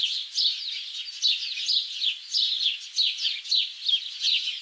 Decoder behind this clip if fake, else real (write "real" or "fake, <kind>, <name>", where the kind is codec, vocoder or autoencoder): real